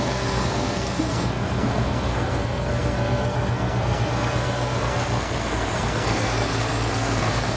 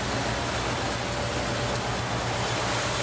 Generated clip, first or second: first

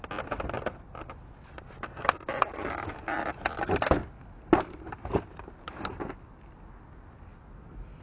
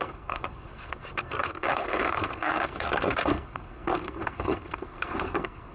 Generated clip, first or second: second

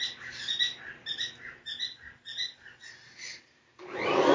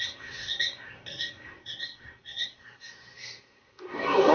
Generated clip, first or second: second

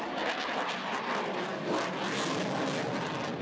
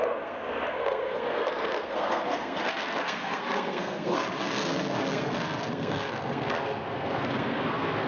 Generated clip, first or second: second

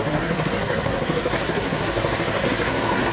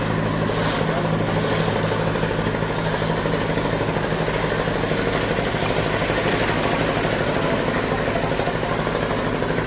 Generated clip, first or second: first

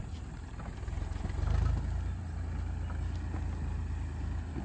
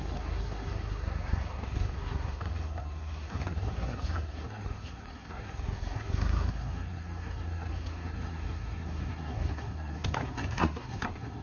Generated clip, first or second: second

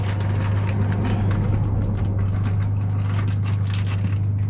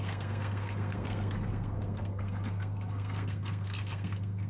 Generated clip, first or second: second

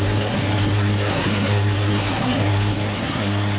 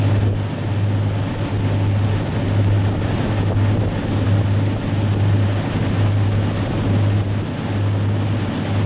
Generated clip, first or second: first